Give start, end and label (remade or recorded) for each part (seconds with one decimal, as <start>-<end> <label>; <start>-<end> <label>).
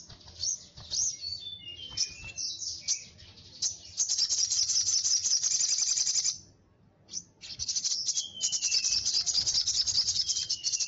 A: 0.0-10.9 recorded